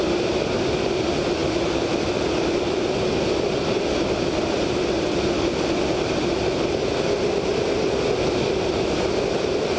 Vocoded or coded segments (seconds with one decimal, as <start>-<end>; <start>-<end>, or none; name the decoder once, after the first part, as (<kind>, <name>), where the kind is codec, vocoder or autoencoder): 0.0-9.8 (vocoder, BigVGAN v2)